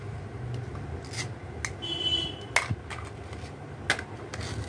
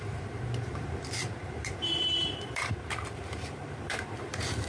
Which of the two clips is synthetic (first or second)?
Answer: second